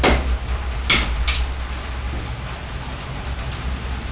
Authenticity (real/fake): real